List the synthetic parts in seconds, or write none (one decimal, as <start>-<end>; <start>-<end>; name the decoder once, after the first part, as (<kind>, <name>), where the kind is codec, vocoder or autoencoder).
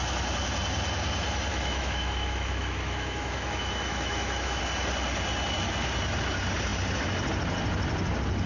1.5-4.6 (autoencoder, DAC-VAE)